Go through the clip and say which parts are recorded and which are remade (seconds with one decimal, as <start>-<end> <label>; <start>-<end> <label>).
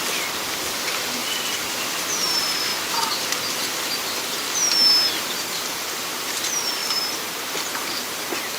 0.0-1.2 remade; 1.2-2.1 recorded; 2.1-2.7 remade; 2.7-5.2 recorded; 5.2-8.6 remade